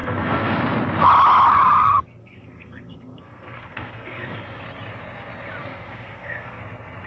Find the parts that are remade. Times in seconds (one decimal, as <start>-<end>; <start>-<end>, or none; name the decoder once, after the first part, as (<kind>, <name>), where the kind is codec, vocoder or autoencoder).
0.0-0.6 (codec, SNAC); 2.2-4.6; 5.6-6.6